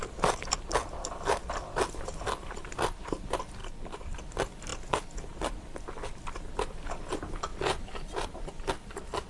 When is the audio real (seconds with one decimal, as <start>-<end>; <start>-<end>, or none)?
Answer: 0.0-3.6; 4.2-4.7; 5.3-7.5; 8.7-9.3